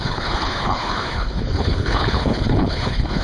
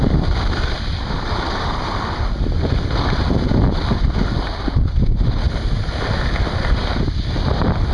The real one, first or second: second